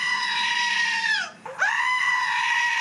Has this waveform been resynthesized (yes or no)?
yes